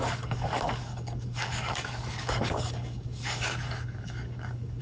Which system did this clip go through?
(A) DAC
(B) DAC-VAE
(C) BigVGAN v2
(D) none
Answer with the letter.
A